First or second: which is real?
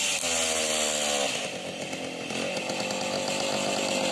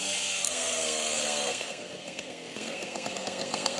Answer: first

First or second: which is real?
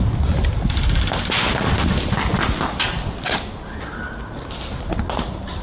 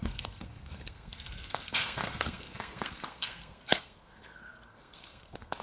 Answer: first